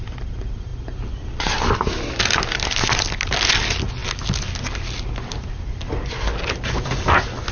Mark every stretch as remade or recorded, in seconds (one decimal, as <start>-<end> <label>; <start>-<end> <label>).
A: 0.0-7.5 recorded